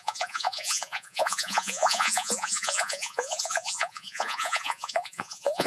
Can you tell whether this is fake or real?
fake